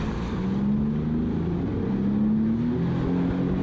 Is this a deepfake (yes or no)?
no